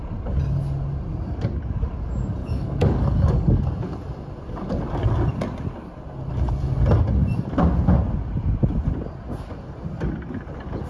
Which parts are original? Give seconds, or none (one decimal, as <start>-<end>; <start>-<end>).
0.0-2.4; 3.6-10.9